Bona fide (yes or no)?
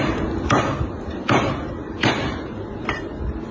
yes